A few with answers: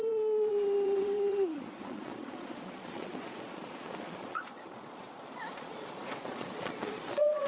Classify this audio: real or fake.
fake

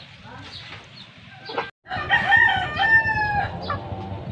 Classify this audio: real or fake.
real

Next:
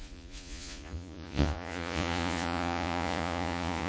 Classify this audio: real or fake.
fake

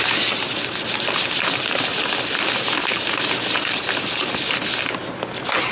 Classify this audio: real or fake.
real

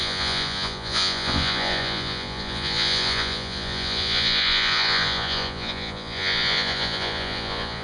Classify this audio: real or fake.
fake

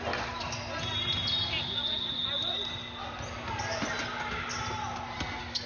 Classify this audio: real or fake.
real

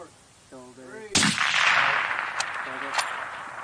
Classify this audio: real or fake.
real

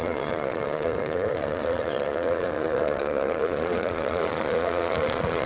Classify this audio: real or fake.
fake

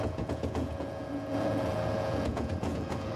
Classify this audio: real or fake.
fake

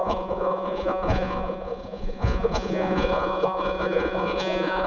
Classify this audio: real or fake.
fake